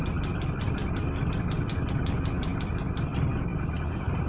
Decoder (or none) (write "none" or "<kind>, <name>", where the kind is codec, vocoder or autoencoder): none